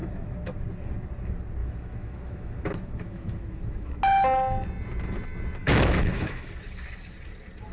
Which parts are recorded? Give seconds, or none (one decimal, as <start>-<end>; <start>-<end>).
0.0-1.6; 3.9-5.6; 6.5-7.7